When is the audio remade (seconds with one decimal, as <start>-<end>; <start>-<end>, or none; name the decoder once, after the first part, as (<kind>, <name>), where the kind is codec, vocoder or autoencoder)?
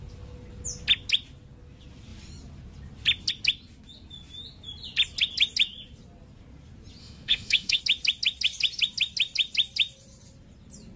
7.0-7.8 (autoencoder, DAC-VAE)